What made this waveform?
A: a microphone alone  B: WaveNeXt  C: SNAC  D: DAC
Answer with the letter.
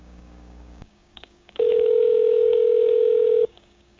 D